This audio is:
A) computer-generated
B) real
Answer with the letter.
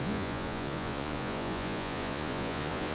A